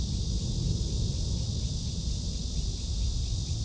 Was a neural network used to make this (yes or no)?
no